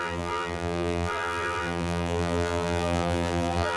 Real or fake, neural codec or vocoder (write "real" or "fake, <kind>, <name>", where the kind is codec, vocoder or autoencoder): fake, vocoder, BigVGAN v2